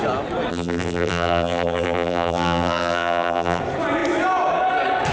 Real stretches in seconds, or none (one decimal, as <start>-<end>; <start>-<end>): 0.0-0.5; 3.6-5.1